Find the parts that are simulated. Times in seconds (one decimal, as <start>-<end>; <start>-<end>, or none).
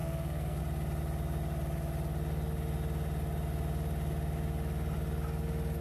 0.0-0.6